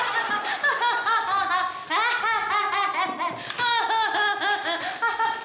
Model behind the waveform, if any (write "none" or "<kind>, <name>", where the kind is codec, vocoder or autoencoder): none